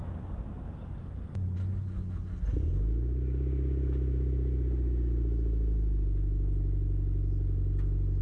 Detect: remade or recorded recorded